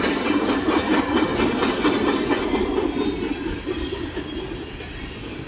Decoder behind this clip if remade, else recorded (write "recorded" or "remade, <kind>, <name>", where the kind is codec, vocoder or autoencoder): recorded